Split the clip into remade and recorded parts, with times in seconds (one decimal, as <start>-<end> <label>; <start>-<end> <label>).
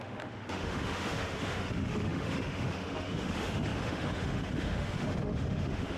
0.0-6.0 remade